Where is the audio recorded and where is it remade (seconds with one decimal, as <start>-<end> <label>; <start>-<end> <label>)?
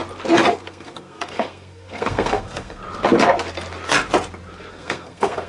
0.0-0.5 recorded; 0.5-2.8 remade; 2.8-4.7 recorded; 4.7-5.5 remade